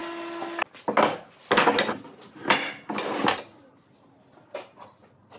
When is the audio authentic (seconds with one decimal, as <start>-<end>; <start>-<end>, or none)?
0.0-5.4